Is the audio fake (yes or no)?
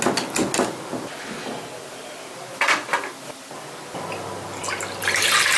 no